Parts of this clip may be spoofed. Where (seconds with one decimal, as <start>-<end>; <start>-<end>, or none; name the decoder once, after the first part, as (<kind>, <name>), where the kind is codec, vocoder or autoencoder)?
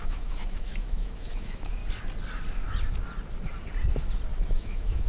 0.0-1.8 (autoencoder, DAC-VAE); 4.4-5.1